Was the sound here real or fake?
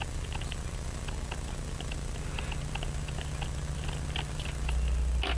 real